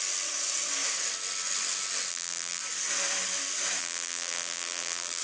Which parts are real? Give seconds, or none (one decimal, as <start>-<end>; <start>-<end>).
0.0-2.1; 2.6-3.8